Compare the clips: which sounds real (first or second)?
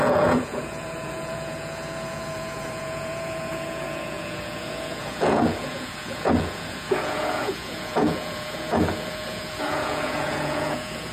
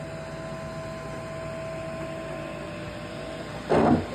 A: second